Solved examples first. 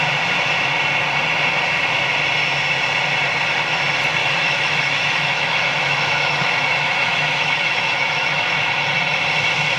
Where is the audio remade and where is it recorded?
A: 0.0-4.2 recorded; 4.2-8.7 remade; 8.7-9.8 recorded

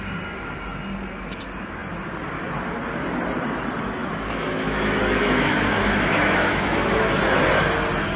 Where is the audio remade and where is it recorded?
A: 0.0-4.0 recorded; 4.0-7.2 remade; 7.2-8.2 recorded

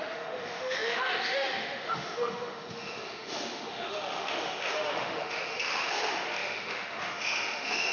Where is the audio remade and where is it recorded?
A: 0.0-7.9 remade

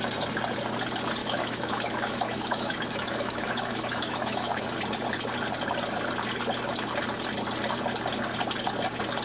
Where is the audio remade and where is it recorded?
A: 0.0-1.2 recorded; 1.2-4.6 remade; 4.6-9.2 recorded

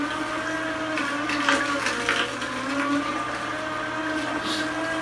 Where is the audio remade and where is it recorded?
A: 0.0-5.0 recorded

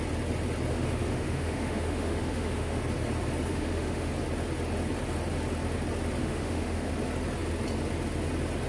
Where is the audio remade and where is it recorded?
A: 0.0-0.7 recorded; 0.7-2.8 remade; 2.8-3.5 recorded; 3.5-4.1 remade; 4.1-6.2 recorded; 6.2-6.9 remade; 6.9-8.7 recorded

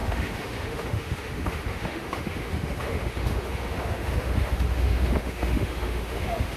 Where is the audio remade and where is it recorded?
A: 0.0-6.6 remade